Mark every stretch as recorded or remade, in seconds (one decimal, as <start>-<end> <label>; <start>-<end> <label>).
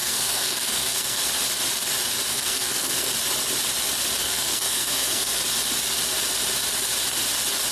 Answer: 0.0-1.3 remade; 1.3-2.3 recorded; 2.3-3.1 remade; 3.1-4.2 recorded; 4.2-5.4 remade; 5.4-7.7 recorded